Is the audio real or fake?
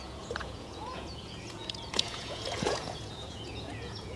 fake